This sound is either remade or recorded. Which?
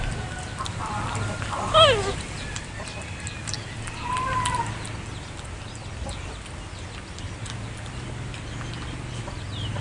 recorded